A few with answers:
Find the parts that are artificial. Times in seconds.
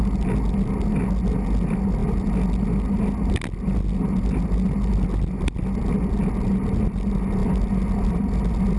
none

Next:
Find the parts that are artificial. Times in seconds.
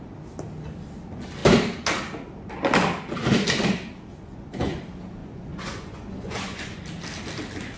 4.1-4.8 (vocoder, Vocos); 5.2-6.8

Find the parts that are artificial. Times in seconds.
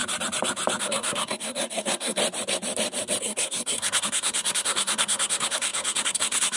0.8-2.2 (codec, SNAC); 3.2-6.6